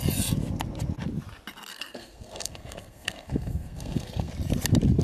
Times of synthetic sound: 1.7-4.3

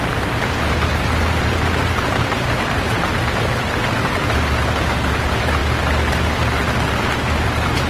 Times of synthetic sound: 0.0-5.6; 7.0-7.9

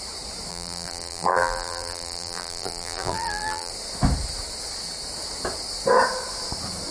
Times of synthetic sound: 0.5-3.7

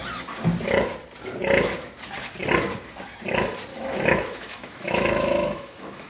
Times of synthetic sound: 3.7-6.1